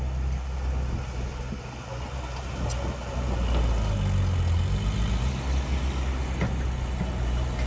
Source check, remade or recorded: recorded